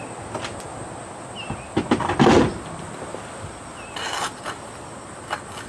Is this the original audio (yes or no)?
yes